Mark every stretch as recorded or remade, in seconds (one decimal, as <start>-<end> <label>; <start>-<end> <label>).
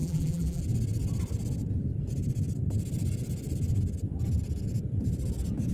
0.0-0.6 remade; 0.6-5.7 recorded